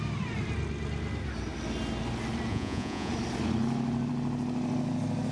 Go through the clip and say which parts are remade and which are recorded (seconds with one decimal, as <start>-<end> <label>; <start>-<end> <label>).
0.0-2.5 recorded; 2.5-3.1 remade; 3.1-5.3 recorded